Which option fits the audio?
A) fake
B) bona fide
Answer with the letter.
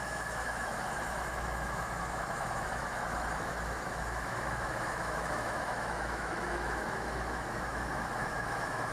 A